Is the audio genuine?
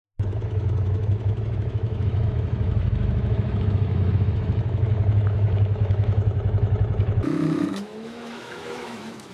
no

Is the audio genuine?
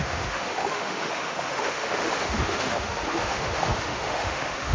no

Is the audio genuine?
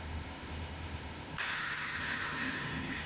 no